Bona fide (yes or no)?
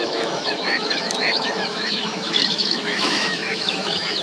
no